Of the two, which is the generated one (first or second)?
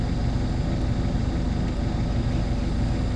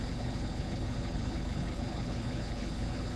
second